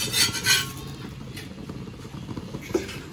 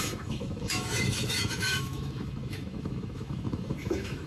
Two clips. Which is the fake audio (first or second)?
second